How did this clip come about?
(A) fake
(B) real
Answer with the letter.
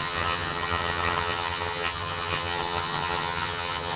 A